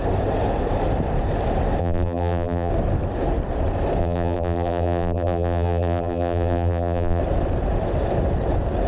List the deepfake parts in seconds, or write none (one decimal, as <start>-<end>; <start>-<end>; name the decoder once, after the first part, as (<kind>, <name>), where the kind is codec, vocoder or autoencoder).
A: 1.8-2.7 (vocoder, BigVGAN v2); 4.0-7.2